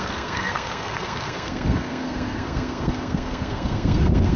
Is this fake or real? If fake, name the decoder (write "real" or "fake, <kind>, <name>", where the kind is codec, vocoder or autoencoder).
fake, codec, SNAC